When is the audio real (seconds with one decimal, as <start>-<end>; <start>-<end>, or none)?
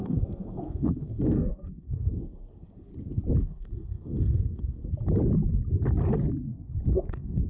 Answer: 2.9-3.4; 4.8-6.9